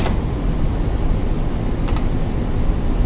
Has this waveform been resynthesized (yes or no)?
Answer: no